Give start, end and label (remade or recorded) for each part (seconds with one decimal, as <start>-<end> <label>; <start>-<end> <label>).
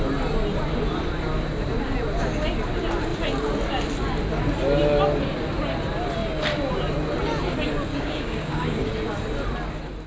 0.0-7.9 recorded; 7.9-8.9 remade; 8.9-10.1 recorded